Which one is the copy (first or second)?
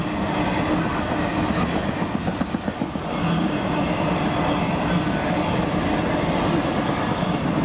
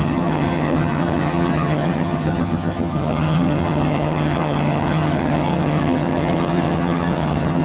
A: second